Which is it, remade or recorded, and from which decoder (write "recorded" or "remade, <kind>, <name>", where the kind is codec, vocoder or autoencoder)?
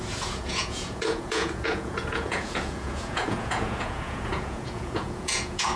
remade, vocoder, Vocos